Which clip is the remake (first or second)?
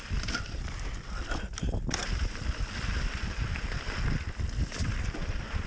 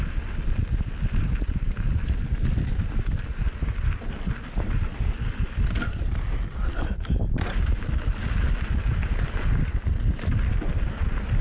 first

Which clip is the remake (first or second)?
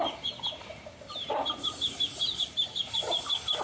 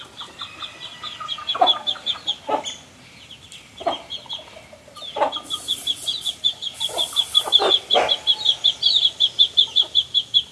first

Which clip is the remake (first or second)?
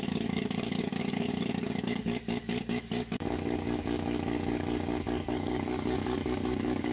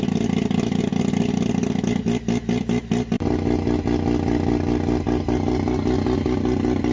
first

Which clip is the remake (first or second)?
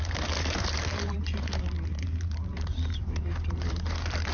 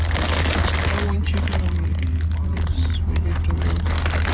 first